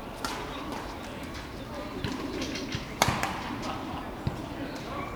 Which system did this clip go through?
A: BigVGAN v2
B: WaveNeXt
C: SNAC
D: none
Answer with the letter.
D